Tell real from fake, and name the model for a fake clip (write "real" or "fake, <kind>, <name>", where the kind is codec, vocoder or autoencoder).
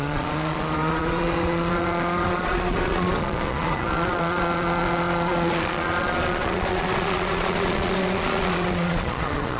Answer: fake, vocoder, Vocos